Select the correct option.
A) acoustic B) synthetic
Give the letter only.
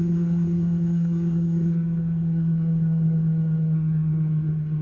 B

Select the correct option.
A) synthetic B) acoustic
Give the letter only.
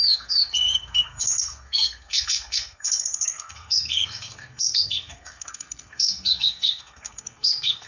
A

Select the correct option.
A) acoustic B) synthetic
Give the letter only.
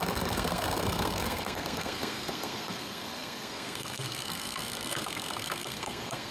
B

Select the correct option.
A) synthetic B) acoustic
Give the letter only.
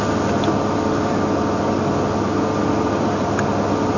B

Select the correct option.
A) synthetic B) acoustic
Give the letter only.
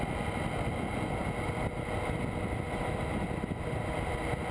B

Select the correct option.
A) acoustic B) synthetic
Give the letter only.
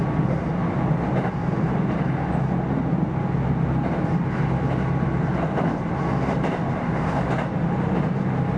A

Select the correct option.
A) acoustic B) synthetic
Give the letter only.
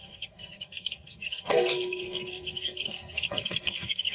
B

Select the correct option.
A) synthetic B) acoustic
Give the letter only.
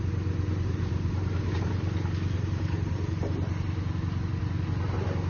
B